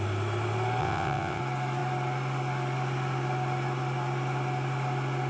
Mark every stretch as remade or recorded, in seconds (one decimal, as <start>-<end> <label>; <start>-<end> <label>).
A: 0.0-0.8 recorded; 0.8-1.4 remade; 1.4-5.3 recorded